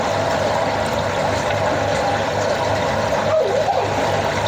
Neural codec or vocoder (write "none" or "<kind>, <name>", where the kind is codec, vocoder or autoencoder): none